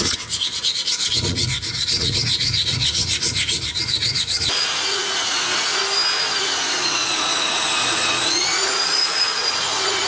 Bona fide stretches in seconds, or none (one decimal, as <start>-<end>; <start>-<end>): 5.8-6.4